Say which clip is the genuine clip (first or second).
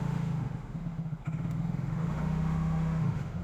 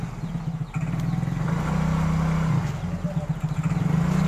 second